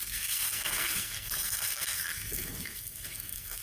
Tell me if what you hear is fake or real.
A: fake